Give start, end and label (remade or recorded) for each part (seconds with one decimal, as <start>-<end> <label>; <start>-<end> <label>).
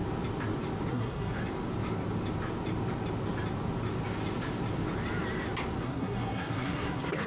0.0-0.9 recorded; 0.9-1.4 remade; 1.4-5.8 recorded; 5.8-7.3 remade